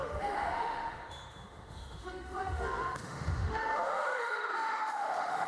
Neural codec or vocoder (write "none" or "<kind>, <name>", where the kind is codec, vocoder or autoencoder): autoencoder, DAC-VAE